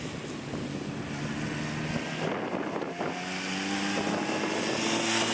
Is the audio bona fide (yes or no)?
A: yes